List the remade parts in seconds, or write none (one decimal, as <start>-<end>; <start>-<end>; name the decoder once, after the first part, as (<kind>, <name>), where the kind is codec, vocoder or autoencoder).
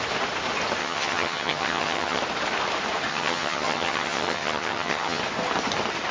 0.8-2.2 (vocoder, HiFi-GAN); 3.1-5.2